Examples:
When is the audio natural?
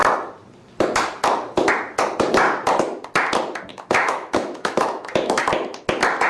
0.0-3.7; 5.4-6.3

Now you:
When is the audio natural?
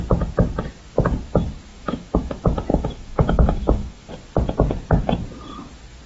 0.0-1.7; 2.3-2.7; 4.1-6.1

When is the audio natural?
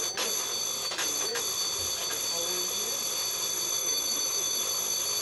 0.0-0.8; 1.4-3.8; 4.6-5.2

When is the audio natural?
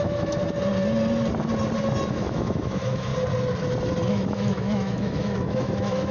0.4-2.1; 3.1-4.1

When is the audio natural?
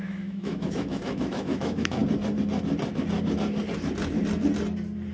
2.0-5.1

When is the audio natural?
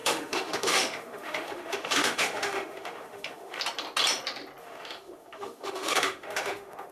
3.6-4.6